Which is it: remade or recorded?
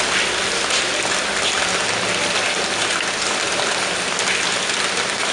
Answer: recorded